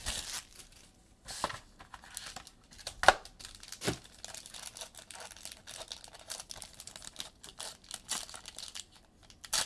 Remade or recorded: recorded